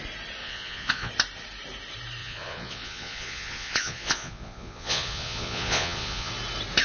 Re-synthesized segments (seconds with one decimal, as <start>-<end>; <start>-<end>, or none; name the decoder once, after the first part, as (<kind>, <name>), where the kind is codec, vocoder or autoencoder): 0.4-1.1 (vocoder, Vocos); 2.2-6.3